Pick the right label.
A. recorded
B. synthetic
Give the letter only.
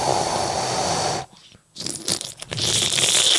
A